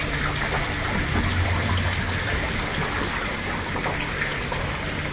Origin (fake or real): real